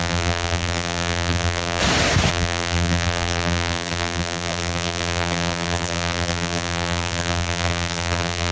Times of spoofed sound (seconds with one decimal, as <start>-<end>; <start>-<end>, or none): 0.0-1.8; 2.3-8.5